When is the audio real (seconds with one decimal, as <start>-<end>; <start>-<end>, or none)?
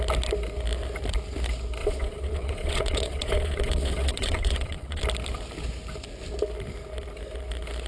0.0-1.8; 5.0-7.9